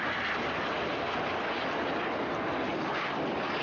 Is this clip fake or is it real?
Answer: real